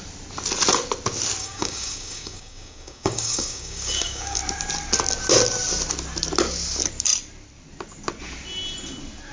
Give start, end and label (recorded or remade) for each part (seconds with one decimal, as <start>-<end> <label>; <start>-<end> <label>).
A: 0.0-1.4 recorded; 1.4-4.4 remade; 4.4-9.3 recorded